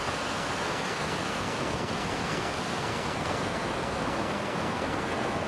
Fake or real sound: fake